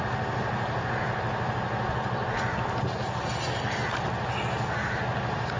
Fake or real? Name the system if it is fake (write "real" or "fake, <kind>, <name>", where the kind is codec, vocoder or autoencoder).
real